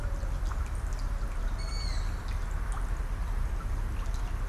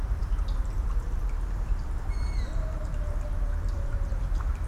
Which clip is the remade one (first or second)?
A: second